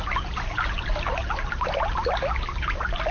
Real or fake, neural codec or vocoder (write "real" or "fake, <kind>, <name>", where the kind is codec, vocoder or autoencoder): real